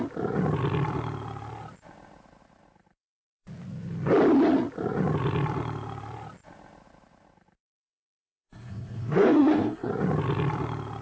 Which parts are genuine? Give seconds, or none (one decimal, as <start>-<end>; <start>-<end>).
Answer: 0.0-7.9; 9.9-11.0